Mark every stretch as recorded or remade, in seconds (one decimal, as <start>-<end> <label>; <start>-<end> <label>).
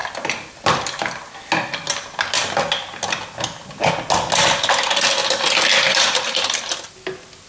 0.0-7.5 recorded